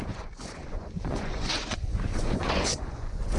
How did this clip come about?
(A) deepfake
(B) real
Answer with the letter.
A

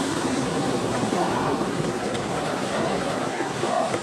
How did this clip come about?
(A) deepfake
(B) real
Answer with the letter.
A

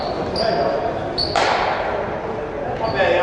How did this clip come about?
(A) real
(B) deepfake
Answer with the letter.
A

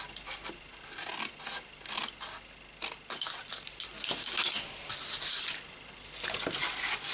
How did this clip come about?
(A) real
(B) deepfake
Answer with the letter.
A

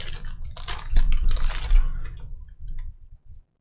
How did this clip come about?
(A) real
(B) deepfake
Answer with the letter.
A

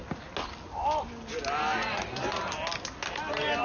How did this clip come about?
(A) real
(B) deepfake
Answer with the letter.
A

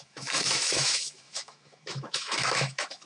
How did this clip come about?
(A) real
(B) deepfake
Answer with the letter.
B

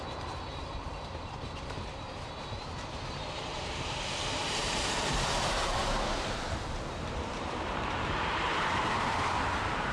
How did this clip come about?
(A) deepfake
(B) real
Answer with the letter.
A